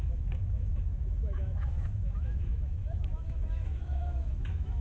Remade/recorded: remade